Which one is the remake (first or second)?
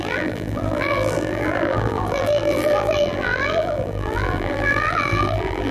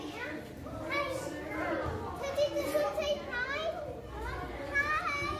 first